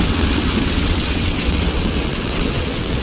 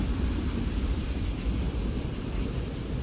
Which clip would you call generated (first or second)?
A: first